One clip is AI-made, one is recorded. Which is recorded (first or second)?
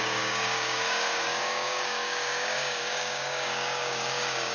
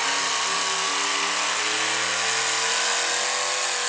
second